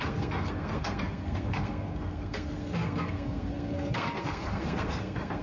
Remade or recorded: remade